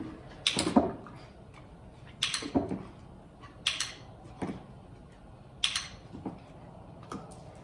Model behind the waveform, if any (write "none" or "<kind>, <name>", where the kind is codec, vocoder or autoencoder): none